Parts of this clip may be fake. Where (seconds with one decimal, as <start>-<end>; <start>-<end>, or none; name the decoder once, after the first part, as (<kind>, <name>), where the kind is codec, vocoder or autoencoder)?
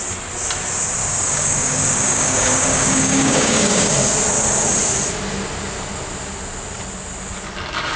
1.0-3.9 (codec, DAC)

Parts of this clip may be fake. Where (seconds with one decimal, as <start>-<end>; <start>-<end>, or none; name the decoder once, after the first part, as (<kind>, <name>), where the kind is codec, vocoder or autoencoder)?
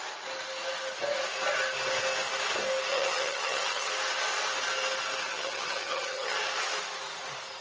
2.9-3.9 (vocoder, HiFi-GAN); 5.3-6.4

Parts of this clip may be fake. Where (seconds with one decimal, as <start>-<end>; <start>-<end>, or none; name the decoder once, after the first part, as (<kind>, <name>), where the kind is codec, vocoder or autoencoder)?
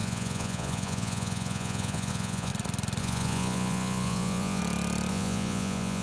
0.0-2.5 (vocoder, Vocos); 3.0-4.6; 5.1-6.0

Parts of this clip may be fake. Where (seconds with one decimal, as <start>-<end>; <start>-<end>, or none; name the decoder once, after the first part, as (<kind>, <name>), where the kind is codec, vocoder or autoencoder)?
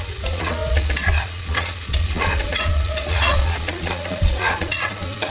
0.0-5.3 (vocoder, Vocos)